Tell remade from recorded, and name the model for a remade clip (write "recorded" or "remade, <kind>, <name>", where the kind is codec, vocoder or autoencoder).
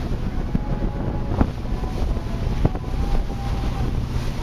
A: recorded